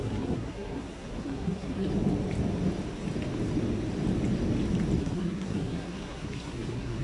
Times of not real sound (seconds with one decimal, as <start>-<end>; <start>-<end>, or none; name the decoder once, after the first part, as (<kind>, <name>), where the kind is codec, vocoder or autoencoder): 0.0-1.9 (codec, SNAC); 5.0-7.0